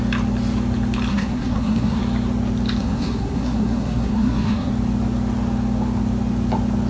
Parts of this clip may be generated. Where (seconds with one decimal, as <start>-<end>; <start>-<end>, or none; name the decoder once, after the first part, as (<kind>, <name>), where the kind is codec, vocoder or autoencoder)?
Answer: 1.1-2.0 (codec, SNAC); 2.8-4.7